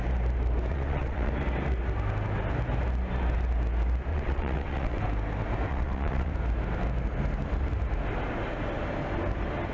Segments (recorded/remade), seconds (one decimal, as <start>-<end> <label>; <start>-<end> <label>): 0.0-0.7 recorded; 0.7-1.3 remade; 1.3-4.1 recorded; 4.1-5.0 remade; 5.0-5.7 recorded; 5.7-6.3 remade; 6.3-9.7 recorded